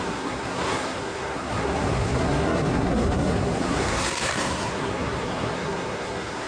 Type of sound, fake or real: fake